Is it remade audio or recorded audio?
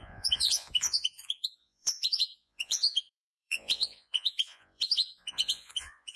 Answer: remade